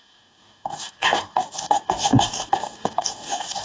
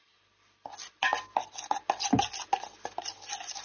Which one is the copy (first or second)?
first